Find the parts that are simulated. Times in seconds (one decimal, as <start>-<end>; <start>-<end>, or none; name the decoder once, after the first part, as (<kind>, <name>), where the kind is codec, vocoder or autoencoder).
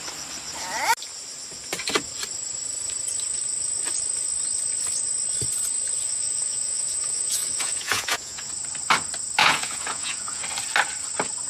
6.0-8.5 (vocoder, Vocos); 9.4-10.4